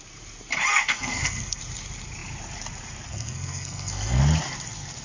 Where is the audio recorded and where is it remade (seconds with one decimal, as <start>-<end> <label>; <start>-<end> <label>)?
0.0-0.7 recorded; 0.7-1.6 remade; 1.6-3.1 recorded; 3.1-4.2 remade; 4.2-5.0 recorded